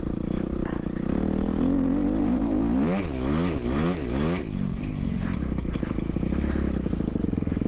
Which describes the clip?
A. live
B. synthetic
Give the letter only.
A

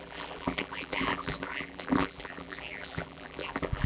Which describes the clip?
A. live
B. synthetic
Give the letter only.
B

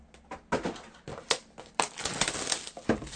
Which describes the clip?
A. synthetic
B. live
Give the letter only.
B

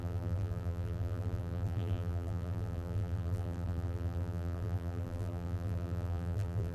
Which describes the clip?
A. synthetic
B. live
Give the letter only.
A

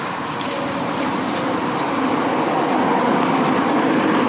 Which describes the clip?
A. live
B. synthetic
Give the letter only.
A